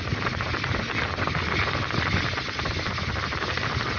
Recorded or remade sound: recorded